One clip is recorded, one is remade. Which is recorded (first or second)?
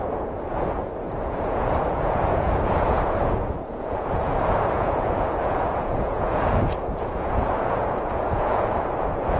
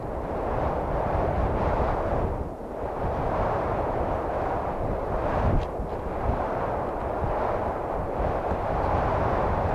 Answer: second